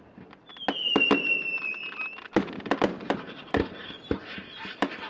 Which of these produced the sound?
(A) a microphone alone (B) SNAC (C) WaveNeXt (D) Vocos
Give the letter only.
A